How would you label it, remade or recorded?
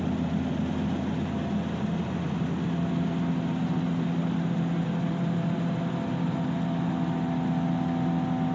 recorded